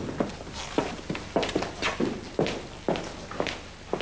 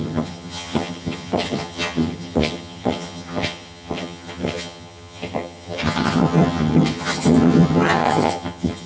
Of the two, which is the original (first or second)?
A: first